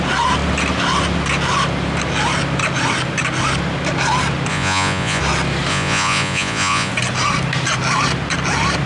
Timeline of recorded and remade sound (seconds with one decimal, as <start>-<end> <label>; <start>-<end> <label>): 0.0-4.5 recorded; 4.5-5.2 remade; 5.2-5.7 recorded; 5.7-6.9 remade; 6.9-8.9 recorded